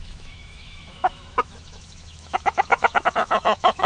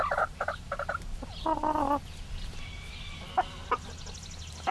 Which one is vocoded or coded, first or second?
first